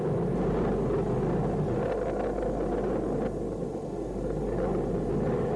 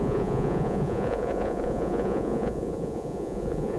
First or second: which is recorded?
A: first